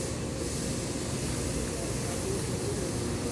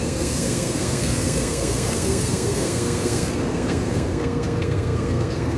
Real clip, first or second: first